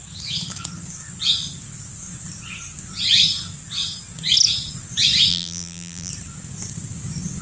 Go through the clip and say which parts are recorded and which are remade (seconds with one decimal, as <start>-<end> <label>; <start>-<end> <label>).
0.0-5.3 recorded; 5.3-6.1 remade; 6.1-7.4 recorded

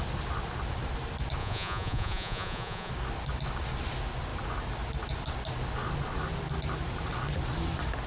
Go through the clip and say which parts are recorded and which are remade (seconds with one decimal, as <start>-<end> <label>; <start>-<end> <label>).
0.0-1.4 recorded; 1.4-2.9 remade; 2.9-8.1 recorded

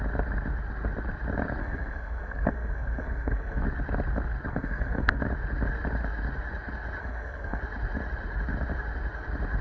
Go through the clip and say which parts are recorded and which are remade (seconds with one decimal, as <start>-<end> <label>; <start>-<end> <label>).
0.0-1.6 recorded; 1.6-3.6 remade; 3.6-4.5 recorded; 4.5-5.2 remade; 5.2-7.0 recorded; 7.0-7.6 remade; 7.6-9.6 recorded

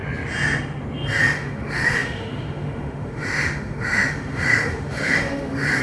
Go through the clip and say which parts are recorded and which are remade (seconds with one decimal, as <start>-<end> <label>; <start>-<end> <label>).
0.0-1.2 recorded; 1.2-5.8 remade

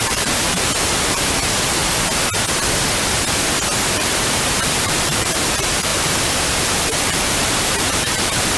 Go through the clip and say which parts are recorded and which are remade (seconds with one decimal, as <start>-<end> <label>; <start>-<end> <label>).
0.0-1.8 remade; 1.8-3.9 recorded; 3.9-8.6 remade

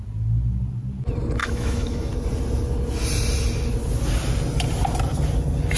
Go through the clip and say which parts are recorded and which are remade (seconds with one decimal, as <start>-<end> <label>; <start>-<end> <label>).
0.0-1.4 recorded; 1.4-2.1 remade; 2.1-5.8 recorded